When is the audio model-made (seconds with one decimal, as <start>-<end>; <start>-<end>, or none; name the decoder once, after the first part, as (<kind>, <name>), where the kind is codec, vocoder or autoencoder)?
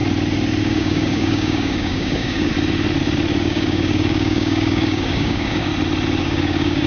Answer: 0.6-2.5 (codec, DAC); 3.4-5.7; 6.2-6.9